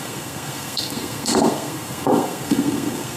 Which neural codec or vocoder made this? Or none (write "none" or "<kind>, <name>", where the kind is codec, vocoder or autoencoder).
codec, SNAC